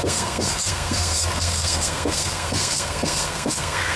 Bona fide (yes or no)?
no